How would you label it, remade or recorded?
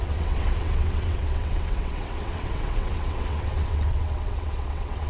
remade